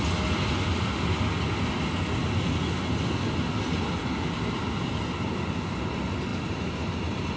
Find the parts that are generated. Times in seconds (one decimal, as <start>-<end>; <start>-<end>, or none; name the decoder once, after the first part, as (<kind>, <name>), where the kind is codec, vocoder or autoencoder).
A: 6.3-7.4 (vocoder, BigVGAN v2)